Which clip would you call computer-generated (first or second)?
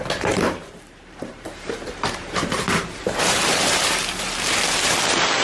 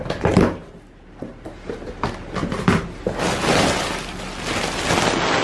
first